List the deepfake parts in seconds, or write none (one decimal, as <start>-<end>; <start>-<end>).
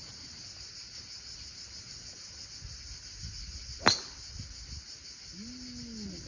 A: none